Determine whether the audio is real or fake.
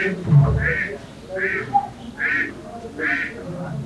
real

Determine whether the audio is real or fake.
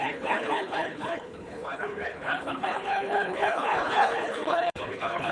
fake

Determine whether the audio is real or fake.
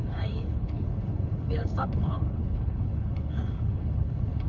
fake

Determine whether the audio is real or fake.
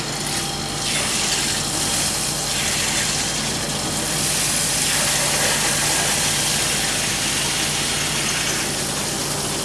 real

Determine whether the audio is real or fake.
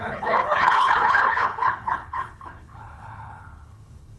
fake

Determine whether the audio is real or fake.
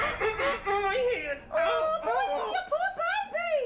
real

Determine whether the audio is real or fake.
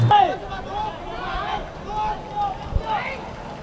real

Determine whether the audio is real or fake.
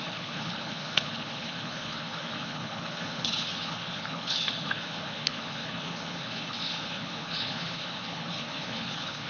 fake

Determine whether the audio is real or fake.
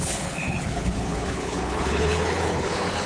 fake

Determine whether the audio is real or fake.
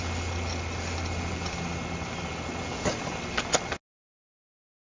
real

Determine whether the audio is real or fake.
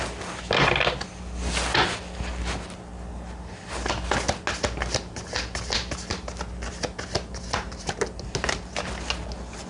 real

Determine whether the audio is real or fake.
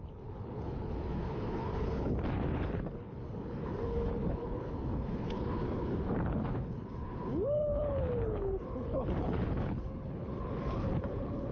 fake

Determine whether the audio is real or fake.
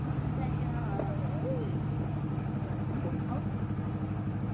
real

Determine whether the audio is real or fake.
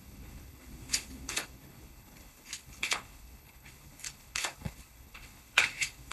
fake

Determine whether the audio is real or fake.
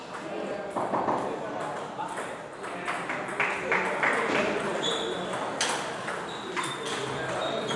real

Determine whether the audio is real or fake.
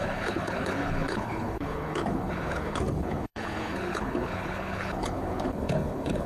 fake